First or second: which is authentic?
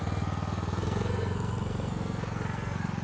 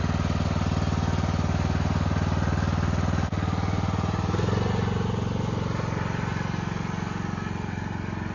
second